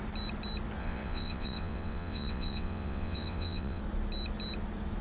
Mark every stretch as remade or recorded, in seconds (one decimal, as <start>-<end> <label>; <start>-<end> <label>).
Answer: 0.0-0.8 recorded; 0.8-3.8 remade; 3.8-5.0 recorded